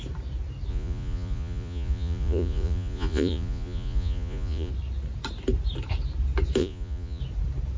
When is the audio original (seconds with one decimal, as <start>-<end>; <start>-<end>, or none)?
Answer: 0.0-0.7; 4.7-6.6; 7.2-7.8